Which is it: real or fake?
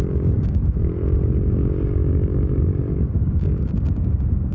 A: fake